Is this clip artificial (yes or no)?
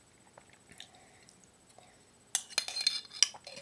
no